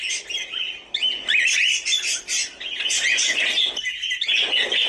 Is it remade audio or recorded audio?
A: recorded